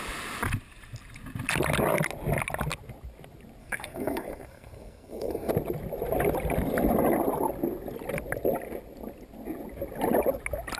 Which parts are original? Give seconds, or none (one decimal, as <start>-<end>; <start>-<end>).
0.0-3.6; 5.5-10.8